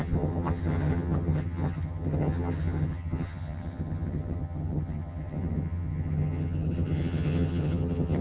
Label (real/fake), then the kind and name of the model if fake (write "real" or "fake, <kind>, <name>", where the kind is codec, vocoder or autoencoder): fake, vocoder, HiFi-GAN